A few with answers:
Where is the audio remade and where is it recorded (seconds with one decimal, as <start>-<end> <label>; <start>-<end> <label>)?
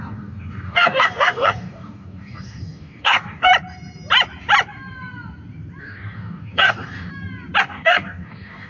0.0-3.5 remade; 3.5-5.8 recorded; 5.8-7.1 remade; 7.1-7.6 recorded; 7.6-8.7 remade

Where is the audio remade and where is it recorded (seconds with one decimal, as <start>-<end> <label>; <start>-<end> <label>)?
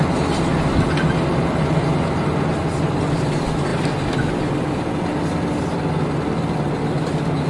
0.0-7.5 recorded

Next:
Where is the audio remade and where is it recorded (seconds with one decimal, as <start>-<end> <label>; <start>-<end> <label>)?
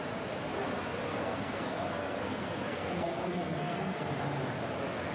0.0-1.1 recorded; 1.1-4.2 remade; 4.2-5.1 recorded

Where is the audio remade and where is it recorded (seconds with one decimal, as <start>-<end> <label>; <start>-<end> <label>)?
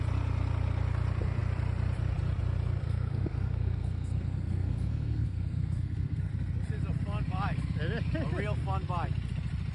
0.0-2.8 recorded; 2.8-6.3 remade; 6.3-9.7 recorded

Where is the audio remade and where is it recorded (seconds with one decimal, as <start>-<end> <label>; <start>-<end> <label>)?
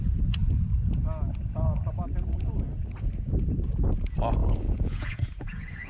0.0-4.4 recorded; 4.4-5.9 remade